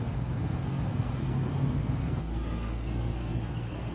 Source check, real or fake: fake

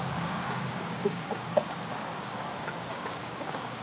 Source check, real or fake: fake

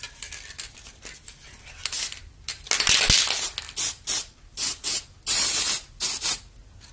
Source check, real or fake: real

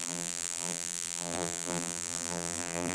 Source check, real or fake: fake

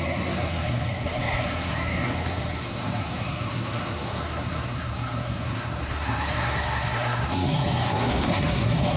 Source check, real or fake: fake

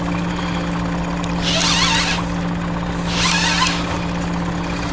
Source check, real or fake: real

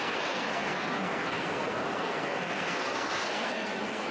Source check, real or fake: fake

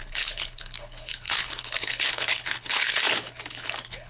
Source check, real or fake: fake